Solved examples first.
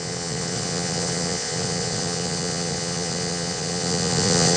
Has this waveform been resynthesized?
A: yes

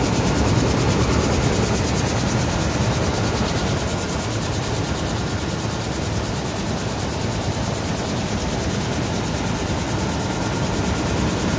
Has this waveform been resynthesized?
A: no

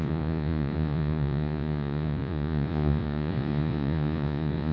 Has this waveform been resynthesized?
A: yes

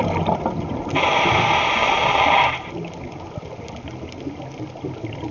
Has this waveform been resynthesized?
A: no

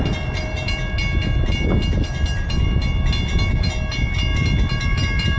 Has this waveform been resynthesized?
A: no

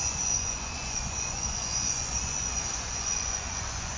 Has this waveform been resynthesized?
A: yes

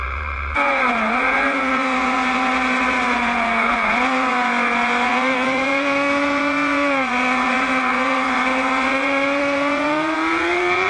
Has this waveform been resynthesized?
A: yes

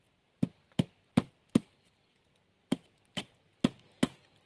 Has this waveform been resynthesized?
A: no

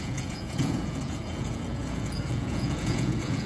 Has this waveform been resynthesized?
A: yes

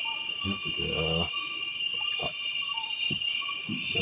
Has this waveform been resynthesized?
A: no